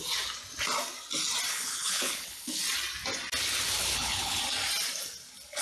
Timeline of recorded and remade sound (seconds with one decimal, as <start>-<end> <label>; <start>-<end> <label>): 0.0-1.5 recorded; 1.5-2.6 remade; 2.6-3.8 recorded; 3.8-4.4 remade; 4.4-5.6 recorded